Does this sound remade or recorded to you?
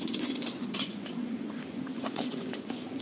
remade